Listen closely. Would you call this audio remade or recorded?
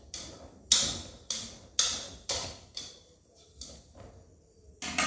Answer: recorded